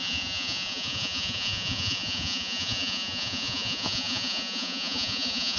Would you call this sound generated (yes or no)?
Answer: yes